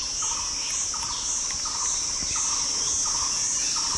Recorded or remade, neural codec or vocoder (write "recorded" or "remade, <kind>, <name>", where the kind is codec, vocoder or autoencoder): recorded